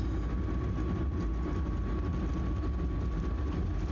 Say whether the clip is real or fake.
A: real